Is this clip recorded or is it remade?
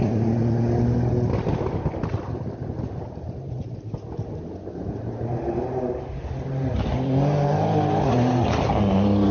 recorded